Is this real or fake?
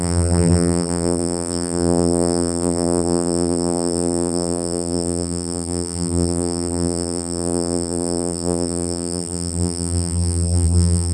fake